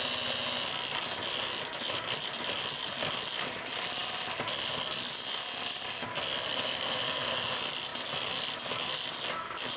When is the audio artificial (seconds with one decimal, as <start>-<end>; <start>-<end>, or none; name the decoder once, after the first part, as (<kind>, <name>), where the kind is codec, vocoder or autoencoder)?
6.5-7.5 (codec, SNAC)